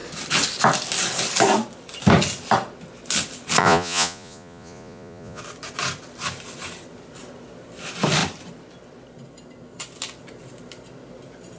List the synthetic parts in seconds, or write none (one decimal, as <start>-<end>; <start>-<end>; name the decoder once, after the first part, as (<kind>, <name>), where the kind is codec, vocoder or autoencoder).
3.6-5.4 (vocoder, Vocos)